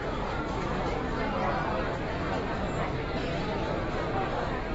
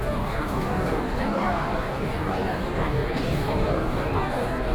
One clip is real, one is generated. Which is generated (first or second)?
second